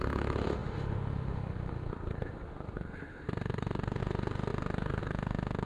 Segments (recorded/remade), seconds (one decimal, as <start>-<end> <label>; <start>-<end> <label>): 0.0-5.7 remade